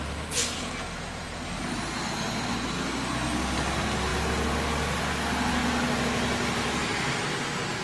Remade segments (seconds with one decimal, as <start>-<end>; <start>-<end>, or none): none